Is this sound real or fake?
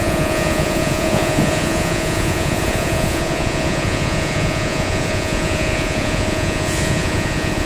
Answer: fake